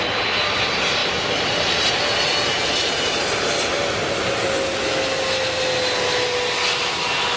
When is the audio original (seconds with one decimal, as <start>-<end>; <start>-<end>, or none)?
0.0-7.4